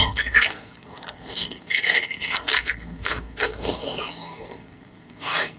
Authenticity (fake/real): fake